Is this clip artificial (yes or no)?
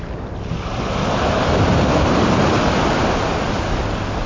no